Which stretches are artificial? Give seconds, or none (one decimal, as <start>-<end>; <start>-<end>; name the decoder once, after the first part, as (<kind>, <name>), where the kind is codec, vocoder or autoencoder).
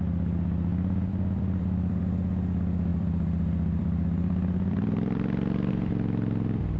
0.7-2.0 (vocoder, BigVGAN v2); 2.9-5.7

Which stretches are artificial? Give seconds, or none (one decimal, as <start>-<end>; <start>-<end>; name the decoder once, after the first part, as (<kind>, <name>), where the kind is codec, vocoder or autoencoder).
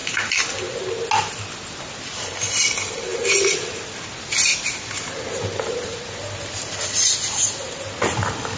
none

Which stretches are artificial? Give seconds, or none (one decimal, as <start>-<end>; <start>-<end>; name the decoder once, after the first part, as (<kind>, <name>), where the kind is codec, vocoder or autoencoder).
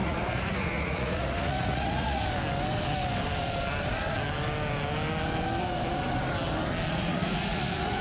0.0-2.2 (vocoder, Vocos); 6.9-8.0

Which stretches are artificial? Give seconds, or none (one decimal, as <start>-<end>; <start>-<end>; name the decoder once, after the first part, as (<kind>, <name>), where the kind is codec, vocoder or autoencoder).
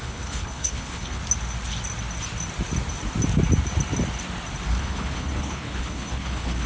0.0-1.2 (codec, HILCodec); 4.8-6.7